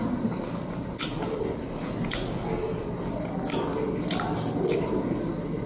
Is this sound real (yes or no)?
yes